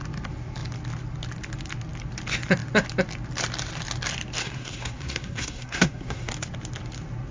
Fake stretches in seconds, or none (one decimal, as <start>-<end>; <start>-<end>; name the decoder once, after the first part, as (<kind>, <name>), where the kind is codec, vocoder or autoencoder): 4.4-6.3 (codec, SNAC)